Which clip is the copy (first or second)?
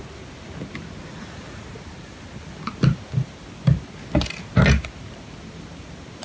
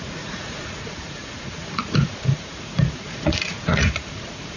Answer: second